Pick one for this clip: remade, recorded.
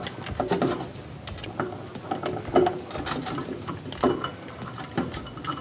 recorded